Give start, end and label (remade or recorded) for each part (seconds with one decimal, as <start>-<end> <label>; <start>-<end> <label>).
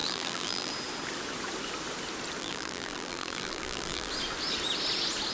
0.0-0.7 remade; 0.7-2.4 recorded; 2.4-4.1 remade; 4.1-5.3 recorded